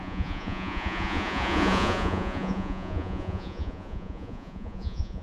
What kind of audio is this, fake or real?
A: fake